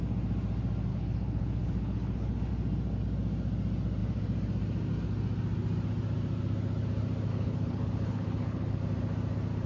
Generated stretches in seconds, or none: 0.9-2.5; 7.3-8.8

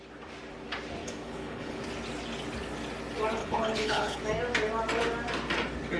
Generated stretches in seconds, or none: 1.0-1.8; 3.4-4.2

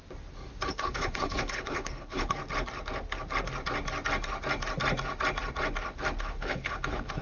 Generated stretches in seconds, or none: 0.7-2.4; 6.2-7.2

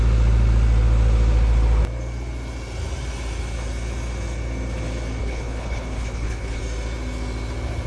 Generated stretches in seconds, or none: 5.2-6.6

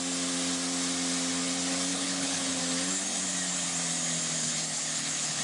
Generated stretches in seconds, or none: 1.9-2.6; 4.4-5.4

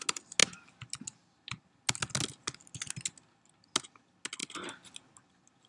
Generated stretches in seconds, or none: none

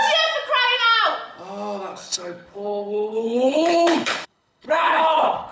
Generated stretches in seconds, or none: 1.9-5.5